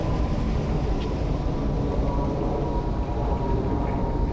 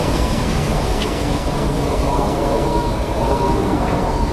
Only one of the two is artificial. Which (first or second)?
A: second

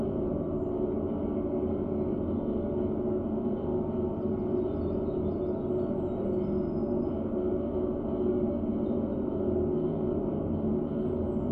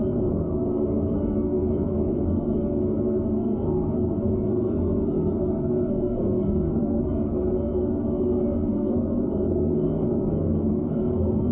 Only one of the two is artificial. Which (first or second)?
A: second